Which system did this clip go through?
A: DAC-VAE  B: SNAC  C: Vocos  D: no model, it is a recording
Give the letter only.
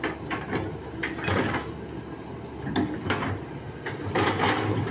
D